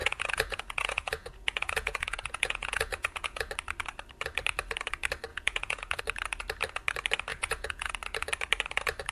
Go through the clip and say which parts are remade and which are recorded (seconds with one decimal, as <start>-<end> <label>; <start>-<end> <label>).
0.0-3.5 remade; 3.5-5.3 recorded; 5.3-6.0 remade; 6.0-7.3 recorded; 7.3-7.9 remade; 7.9-9.1 recorded